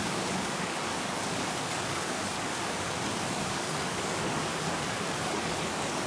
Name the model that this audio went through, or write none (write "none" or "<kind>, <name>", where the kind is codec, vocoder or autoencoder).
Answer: codec, DAC